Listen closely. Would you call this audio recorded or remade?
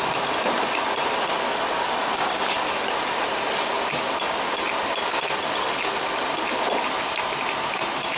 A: recorded